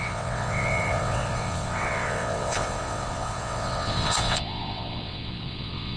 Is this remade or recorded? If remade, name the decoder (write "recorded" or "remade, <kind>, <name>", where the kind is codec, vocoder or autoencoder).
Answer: remade, vocoder, WaveNeXt